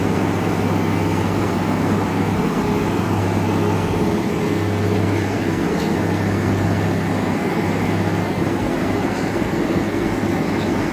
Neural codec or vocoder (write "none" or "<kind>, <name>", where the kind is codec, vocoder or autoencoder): codec, SNAC